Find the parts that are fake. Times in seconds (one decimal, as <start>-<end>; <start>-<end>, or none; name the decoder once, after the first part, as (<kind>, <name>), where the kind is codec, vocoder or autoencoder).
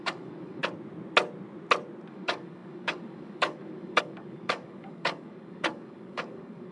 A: 0.0-0.6 (codec, DAC); 2.1-6.7